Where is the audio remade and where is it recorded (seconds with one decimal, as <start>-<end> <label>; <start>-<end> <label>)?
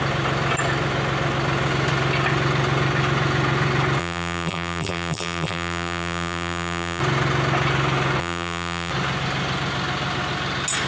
0.0-4.0 recorded; 4.0-7.0 remade; 7.0-8.2 recorded; 8.2-8.9 remade; 8.9-10.9 recorded